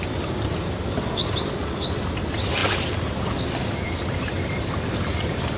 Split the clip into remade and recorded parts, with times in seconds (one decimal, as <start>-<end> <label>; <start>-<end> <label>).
0.0-5.6 recorded